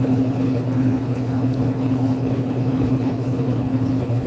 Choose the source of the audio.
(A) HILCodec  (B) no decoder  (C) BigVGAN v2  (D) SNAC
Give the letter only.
A